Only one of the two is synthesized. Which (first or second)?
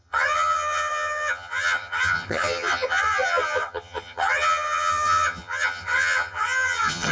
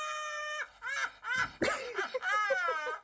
first